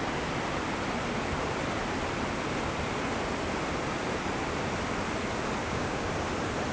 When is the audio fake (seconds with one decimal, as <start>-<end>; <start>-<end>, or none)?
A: 5.6-6.1